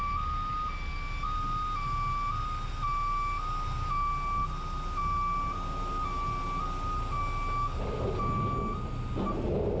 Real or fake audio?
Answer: real